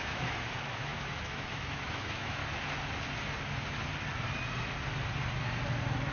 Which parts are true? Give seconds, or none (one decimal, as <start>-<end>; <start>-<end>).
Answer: 2.4-6.1